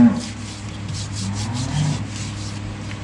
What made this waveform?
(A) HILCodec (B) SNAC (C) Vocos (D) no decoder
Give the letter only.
D